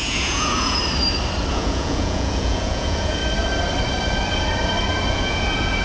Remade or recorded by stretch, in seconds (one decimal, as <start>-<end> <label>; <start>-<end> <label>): 0.0-0.8 remade; 0.8-1.5 recorded; 1.5-3.2 remade; 3.2-5.1 recorded; 5.1-5.8 remade